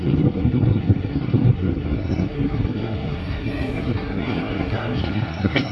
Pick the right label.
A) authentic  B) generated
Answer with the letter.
B